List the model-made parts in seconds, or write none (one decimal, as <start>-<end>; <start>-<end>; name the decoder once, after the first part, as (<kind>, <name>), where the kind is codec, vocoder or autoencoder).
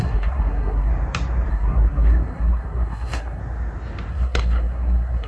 0.0-0.9 (codec, SNAC); 1.5-3.4; 4.1-5.3